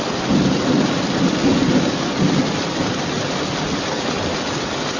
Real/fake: real